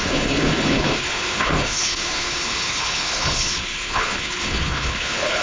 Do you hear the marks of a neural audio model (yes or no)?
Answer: yes